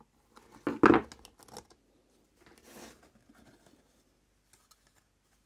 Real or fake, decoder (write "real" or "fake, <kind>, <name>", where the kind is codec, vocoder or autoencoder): real